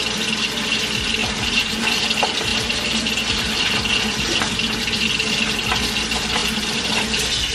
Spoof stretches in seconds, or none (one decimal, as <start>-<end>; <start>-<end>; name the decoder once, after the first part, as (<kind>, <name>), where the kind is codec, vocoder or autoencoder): 1.2-2.0 (vocoder, BigVGAN v2); 2.5-3.6

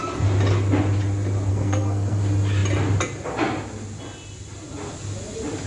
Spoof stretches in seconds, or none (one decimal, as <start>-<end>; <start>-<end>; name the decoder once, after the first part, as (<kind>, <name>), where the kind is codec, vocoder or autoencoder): 1.5-2.2 (codec, SNAC)

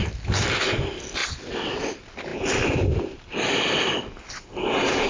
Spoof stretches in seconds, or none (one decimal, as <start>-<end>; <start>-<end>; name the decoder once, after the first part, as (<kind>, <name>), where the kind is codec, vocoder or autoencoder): 1.2-1.8 (vocoder, WaveNeXt)

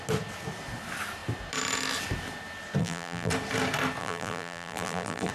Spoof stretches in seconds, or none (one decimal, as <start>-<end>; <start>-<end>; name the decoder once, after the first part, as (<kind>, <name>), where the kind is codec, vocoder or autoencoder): 2.8-3.3 (vocoder, BigVGAN v2); 4.0-5.3

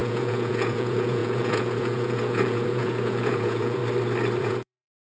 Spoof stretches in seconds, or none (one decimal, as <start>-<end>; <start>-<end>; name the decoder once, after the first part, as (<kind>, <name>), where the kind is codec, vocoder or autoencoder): 0.0-3.8 (vocoder, Vocos); 4.4-5.0